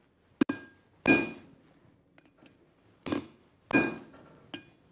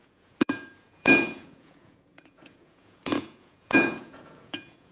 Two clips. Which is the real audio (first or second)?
first